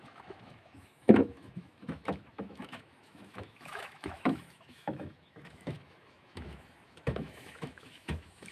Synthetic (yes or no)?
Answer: yes